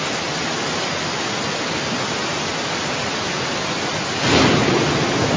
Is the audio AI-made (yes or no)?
no